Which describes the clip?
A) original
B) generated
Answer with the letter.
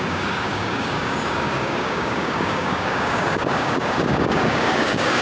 B